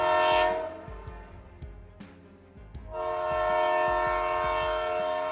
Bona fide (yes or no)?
yes